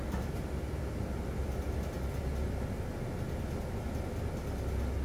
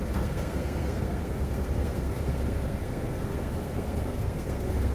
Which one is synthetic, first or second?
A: second